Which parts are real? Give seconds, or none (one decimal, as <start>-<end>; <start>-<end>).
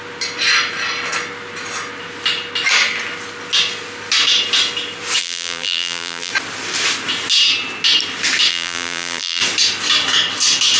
0.0-5.2; 6.3-8.5; 9.4-10.8